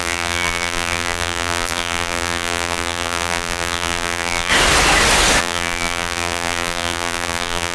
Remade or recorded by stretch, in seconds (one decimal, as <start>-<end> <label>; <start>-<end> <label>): 0.0-4.5 remade; 4.5-5.4 recorded; 5.4-7.7 remade